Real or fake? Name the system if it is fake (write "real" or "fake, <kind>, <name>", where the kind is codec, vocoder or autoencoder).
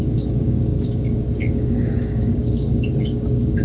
fake, codec, DAC